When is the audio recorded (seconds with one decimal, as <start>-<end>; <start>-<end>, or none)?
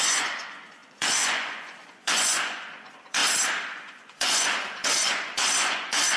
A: 3.2-3.7